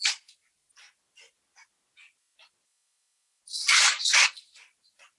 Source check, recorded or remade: recorded